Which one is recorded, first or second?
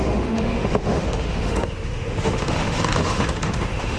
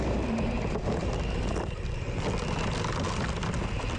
second